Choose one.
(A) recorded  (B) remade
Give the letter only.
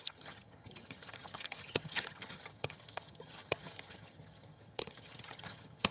B